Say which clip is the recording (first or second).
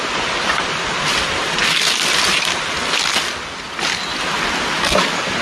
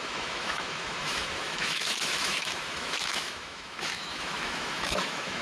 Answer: first